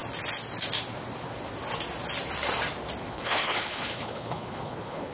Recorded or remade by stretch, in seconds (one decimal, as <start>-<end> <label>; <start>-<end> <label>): 0.0-3.1 recorded; 3.1-5.1 remade